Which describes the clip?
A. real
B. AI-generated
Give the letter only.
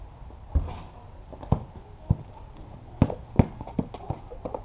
A